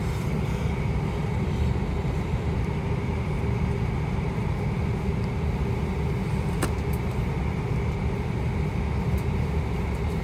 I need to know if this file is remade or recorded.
recorded